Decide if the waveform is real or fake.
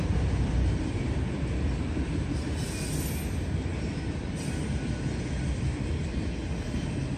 real